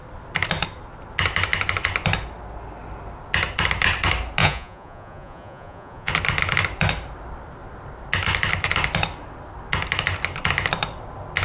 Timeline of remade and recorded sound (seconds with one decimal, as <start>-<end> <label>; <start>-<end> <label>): 0.0-4.4 recorded; 4.4-6.1 remade; 6.1-11.4 recorded